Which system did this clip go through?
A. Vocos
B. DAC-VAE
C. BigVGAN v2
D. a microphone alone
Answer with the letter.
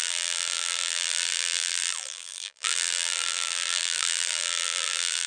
C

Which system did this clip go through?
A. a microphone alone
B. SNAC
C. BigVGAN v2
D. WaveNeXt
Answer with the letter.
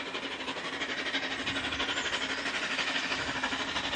A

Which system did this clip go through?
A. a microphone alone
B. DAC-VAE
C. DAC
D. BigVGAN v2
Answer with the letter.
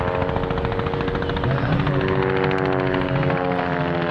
A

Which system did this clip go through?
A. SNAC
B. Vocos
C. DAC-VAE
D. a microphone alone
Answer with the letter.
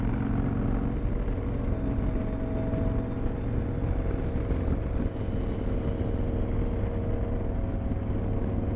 D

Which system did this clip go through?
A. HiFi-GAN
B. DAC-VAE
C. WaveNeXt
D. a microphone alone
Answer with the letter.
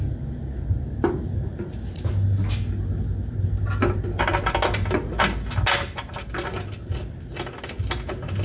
D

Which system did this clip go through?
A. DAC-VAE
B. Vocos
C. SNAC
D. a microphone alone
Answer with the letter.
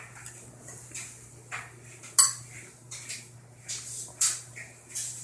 D